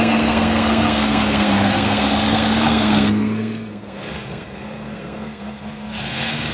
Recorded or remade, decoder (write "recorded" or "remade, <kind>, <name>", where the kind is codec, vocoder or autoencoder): remade, codec, SNAC